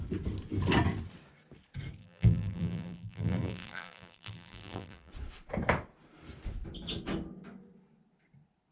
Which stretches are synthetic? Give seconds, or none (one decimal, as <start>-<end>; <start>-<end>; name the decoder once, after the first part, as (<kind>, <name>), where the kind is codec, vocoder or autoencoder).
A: 2.0-5.1 (vocoder, BigVGAN v2)